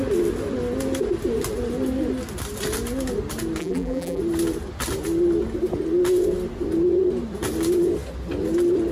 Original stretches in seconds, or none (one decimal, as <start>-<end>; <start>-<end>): 0.0-3.6; 4.2-8.9